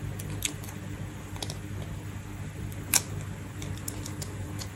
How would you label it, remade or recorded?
recorded